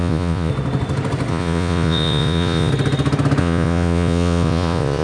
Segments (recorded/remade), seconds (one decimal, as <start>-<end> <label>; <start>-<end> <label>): 0.0-0.5 remade; 0.5-1.3 recorded; 1.3-2.7 remade; 2.7-3.4 recorded; 3.4-5.0 remade